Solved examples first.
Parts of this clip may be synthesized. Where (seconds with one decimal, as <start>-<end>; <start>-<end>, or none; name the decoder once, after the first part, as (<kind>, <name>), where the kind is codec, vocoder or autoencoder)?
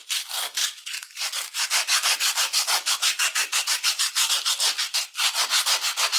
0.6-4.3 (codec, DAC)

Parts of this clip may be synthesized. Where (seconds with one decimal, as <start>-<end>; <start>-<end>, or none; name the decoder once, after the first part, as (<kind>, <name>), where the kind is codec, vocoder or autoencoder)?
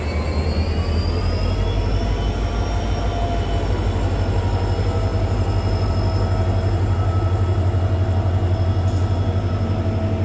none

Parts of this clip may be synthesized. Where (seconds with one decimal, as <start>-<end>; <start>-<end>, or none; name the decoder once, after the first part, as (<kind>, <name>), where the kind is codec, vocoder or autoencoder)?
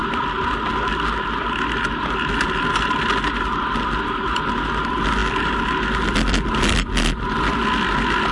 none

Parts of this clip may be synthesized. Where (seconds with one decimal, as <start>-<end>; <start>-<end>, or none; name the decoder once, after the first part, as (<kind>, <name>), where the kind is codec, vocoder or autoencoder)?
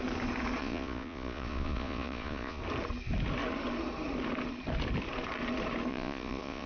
0.6-2.6 (vocoder, Vocos); 5.9-6.7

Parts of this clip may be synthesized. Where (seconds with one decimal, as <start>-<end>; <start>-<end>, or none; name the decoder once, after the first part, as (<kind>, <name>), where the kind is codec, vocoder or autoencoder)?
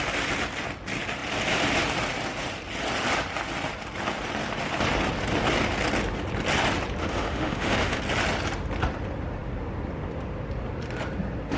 7.0-8.0 (autoencoder, DAC-VAE)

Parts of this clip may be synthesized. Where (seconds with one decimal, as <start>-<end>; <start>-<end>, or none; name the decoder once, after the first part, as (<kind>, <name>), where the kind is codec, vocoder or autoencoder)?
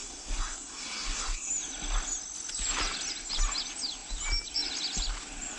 0.0-1.5 (codec, SNAC)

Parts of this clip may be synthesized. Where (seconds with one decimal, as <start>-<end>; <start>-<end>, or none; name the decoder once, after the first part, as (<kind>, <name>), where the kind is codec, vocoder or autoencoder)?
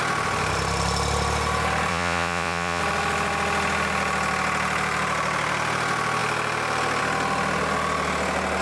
1.9-2.8 (vocoder, Vocos)